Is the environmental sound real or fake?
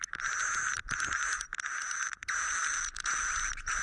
real